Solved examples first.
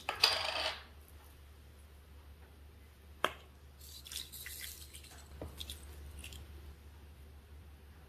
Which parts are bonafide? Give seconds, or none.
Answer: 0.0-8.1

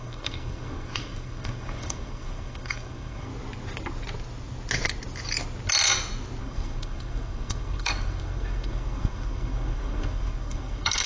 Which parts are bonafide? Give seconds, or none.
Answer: 3.3-6.4

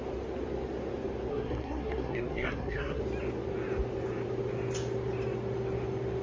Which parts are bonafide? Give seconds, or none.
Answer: 0.0-1.3; 3.0-6.2

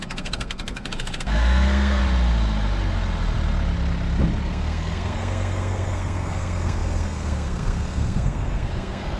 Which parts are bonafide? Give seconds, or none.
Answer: 2.0-4.5